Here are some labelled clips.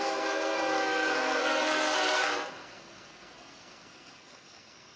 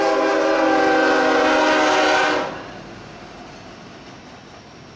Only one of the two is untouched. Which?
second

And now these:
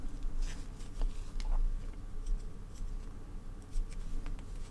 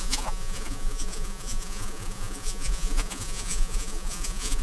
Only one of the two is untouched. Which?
first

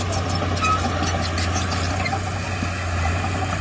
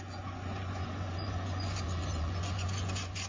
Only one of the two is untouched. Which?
first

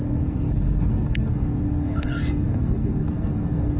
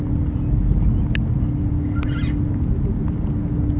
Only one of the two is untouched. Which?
second